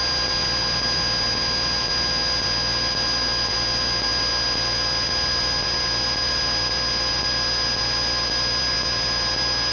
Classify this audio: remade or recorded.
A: recorded